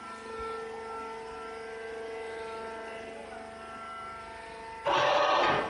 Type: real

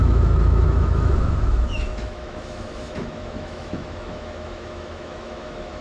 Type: fake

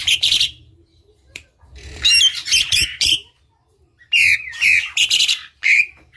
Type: fake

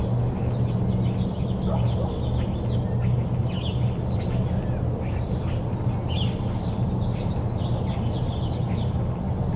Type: real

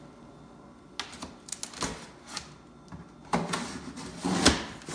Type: real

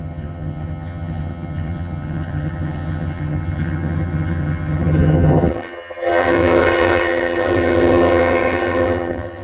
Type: fake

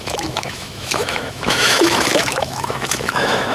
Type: fake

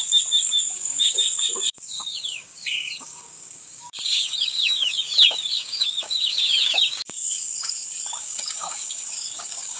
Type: fake